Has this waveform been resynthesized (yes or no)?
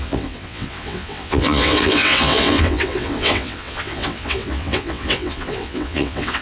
yes